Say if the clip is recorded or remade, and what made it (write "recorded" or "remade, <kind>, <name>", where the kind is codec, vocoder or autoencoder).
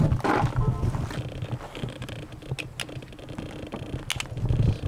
recorded